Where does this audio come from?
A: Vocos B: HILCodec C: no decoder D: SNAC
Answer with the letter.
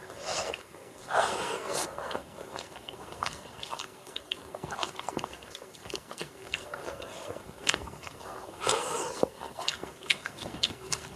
D